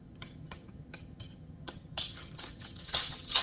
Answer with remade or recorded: remade